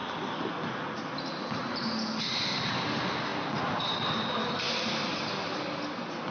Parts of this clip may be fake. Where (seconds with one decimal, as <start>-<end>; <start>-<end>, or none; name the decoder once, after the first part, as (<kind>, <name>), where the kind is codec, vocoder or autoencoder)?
none